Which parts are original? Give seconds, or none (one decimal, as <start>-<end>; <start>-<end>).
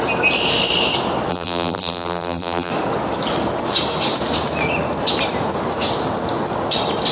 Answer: 0.0-1.3; 2.7-7.1